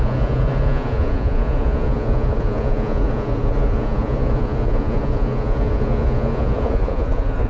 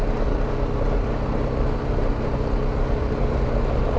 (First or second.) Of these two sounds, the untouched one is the second